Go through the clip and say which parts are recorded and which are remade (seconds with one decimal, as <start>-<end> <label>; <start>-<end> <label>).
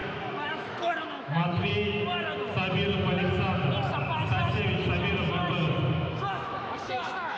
0.0-1.7 remade; 1.7-6.1 recorded; 6.1-7.4 remade